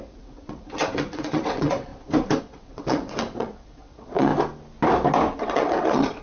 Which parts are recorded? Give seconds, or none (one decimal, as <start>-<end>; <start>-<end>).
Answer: 1.9-2.4; 4.3-5.4